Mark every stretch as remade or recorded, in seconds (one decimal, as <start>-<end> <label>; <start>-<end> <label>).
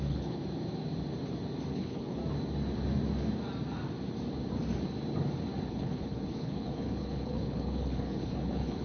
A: 0.0-0.4 remade; 0.4-1.7 recorded; 1.7-2.2 remade; 2.2-5.7 recorded; 5.7-8.8 remade